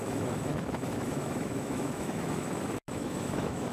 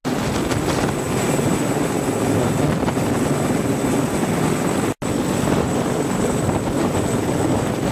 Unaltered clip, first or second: second